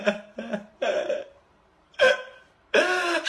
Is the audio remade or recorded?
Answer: remade